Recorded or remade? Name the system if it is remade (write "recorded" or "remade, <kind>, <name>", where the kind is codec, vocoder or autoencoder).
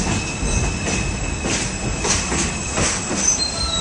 recorded